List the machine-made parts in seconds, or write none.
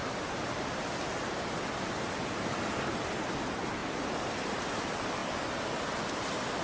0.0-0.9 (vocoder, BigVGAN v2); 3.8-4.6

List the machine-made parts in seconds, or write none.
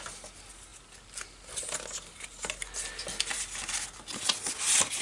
none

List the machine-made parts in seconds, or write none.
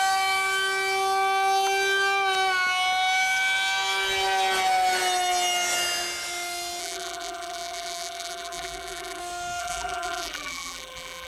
6.8-9.2 (vocoder, BigVGAN v2); 9.6-11.3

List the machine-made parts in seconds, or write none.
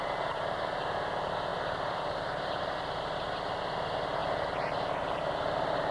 1.5-2.6 (vocoder, BigVGAN v2); 4.2-5.9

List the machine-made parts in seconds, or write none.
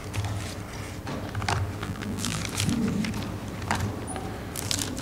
1.8-2.4 (vocoder, BigVGAN v2)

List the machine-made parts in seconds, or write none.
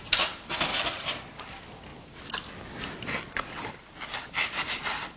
0.0-0.7 (vocoder, BigVGAN v2); 1.4-1.9; 4.1-5.2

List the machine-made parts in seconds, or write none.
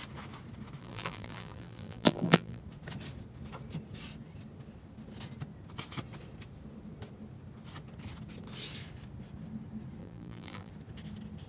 0.8-2.6 (vocoder, BigVGAN v2); 10.0-10.7